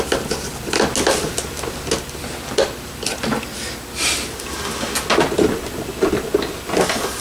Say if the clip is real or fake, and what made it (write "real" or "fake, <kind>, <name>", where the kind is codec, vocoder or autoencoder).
real